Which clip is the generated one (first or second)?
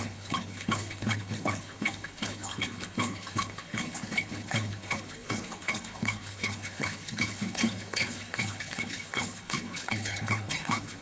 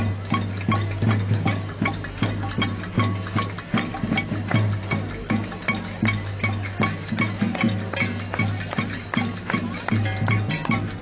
first